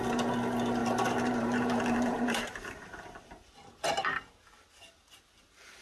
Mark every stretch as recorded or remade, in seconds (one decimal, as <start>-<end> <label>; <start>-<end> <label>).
0.0-0.8 recorded; 0.8-3.2 remade; 3.2-5.8 recorded